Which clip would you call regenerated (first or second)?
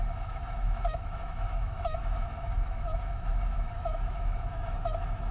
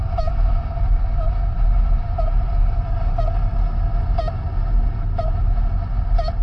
first